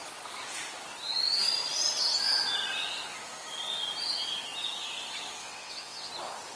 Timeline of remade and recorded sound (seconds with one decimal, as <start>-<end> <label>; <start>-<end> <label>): 0.0-5.4 recorded; 5.4-6.1 remade; 6.1-6.6 recorded